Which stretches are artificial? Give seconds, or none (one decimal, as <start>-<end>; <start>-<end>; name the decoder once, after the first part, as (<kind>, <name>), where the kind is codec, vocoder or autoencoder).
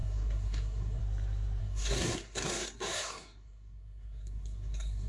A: 0.0-1.0 (codec, SNAC); 1.6-5.1